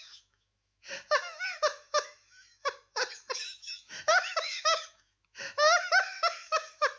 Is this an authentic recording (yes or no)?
no